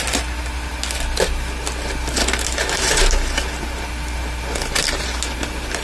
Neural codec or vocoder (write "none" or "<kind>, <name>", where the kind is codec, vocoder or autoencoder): none